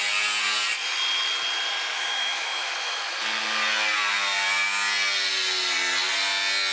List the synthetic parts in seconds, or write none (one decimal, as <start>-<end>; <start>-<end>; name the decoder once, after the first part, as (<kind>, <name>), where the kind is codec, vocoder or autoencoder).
1.9-3.1 (autoencoder, DAC-VAE)